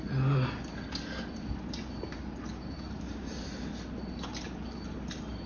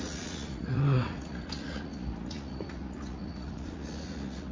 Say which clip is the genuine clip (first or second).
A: first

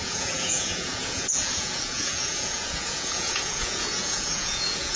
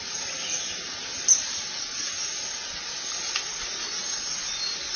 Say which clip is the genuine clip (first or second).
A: second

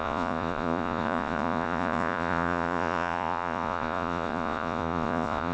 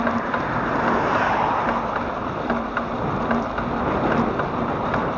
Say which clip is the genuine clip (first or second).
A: second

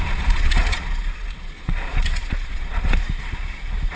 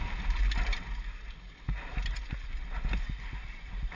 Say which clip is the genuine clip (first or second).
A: second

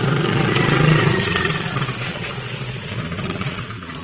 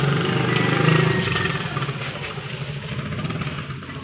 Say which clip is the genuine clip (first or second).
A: second